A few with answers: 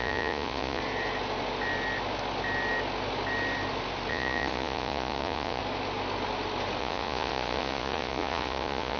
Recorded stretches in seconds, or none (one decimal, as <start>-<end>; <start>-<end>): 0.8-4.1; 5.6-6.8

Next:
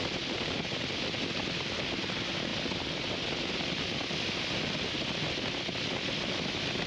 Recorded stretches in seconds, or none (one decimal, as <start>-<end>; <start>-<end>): 0.0-6.9

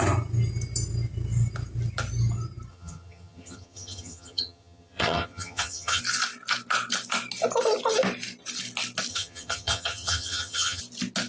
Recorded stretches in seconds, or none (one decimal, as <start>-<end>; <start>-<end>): 0.0-2.7; 6.0-9.1; 10.8-11.3

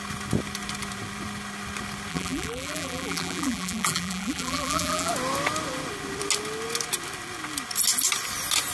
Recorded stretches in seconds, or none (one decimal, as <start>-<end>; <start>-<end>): 0.0-2.1; 5.1-8.7